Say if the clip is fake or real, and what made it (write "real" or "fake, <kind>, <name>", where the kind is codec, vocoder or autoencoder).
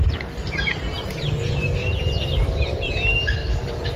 fake, vocoder, BigVGAN v2